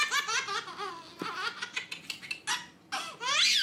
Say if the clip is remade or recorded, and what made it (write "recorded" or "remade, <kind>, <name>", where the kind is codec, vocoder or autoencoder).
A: recorded